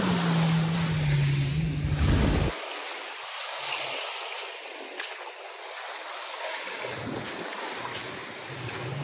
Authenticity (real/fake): real